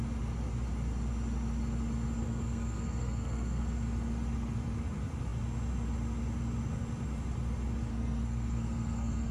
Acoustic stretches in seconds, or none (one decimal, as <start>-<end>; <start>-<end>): 0.0-2.2; 3.6-7.9